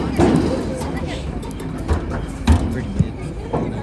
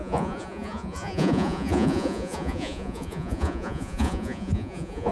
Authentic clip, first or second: first